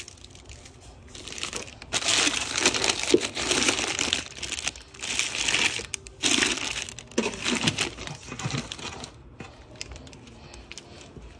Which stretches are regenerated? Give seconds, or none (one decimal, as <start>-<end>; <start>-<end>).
none